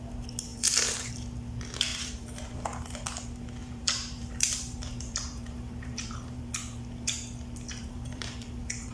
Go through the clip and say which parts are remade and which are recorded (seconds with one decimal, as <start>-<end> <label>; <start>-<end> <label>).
0.0-0.5 recorded; 0.5-1.2 remade; 1.2-1.9 recorded; 1.9-2.6 remade; 2.6-3.6 recorded; 3.6-6.4 remade; 6.4-7.8 recorded; 7.8-8.9 remade